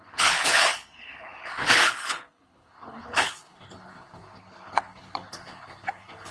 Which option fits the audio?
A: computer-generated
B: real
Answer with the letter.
A